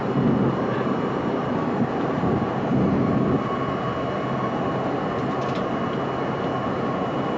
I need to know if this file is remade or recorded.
recorded